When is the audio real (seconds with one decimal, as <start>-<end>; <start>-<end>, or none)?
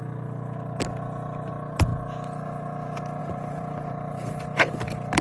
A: 0.0-3.2